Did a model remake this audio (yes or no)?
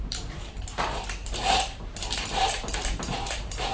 yes